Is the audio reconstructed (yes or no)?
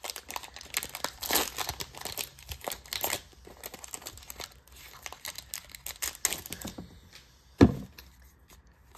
no